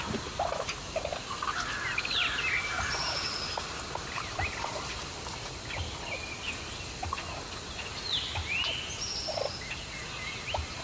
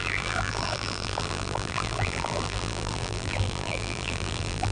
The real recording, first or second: first